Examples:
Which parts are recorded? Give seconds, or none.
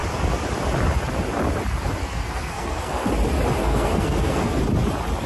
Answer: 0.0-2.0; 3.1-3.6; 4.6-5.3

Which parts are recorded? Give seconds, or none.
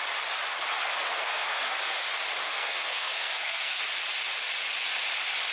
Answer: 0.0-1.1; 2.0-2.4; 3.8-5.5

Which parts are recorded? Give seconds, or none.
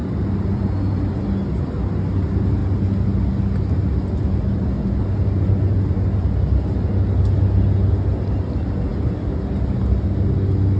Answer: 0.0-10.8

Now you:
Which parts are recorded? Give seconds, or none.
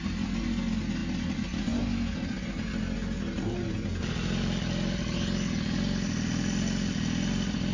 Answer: 0.0-7.7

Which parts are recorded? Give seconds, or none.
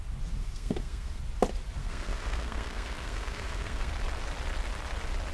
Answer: 0.0-0.4; 1.2-1.8; 3.9-5.3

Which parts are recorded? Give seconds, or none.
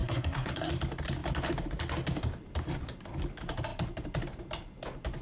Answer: 0.7-5.2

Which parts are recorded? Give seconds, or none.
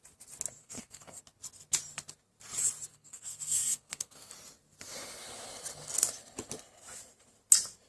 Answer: 0.0-0.6; 1.2-2.9; 4.3-7.9